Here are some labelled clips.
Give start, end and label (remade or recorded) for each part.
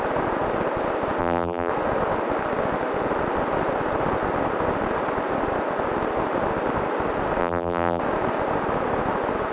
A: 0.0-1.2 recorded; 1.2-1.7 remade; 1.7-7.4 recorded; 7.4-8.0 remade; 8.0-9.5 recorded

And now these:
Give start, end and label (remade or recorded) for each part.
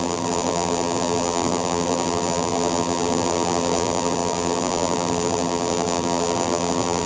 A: 0.0-7.1 remade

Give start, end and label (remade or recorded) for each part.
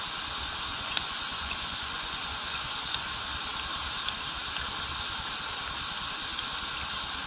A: 0.0-0.7 recorded; 0.7-3.1 remade; 3.1-7.3 recorded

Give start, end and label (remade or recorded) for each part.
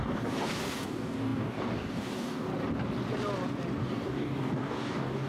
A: 0.0-2.5 remade; 2.5-3.8 recorded; 3.8-5.3 remade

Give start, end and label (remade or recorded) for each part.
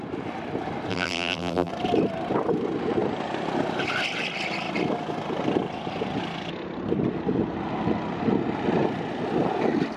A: 0.0-0.9 recorded; 0.9-1.7 remade; 1.7-10.0 recorded